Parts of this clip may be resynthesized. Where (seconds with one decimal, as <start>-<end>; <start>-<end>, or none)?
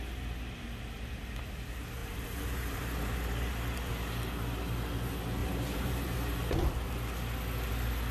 2.0-3.9; 5.4-6.7